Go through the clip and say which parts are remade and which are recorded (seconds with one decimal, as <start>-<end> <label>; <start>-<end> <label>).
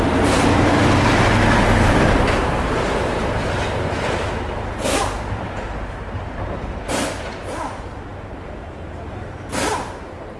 0.0-10.4 remade